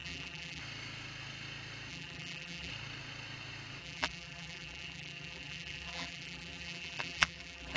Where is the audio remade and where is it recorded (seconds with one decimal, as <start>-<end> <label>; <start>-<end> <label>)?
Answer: 0.0-0.6 remade; 0.6-1.9 recorded; 1.9-2.7 remade; 2.7-3.8 recorded; 3.8-7.8 remade